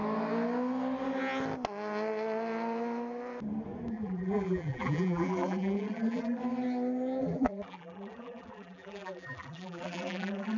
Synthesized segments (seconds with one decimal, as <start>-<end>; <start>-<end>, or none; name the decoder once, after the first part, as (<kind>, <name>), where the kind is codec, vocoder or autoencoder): 3.9-6.4 (vocoder, BigVGAN v2); 7.2-10.6